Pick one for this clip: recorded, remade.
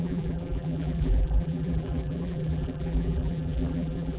remade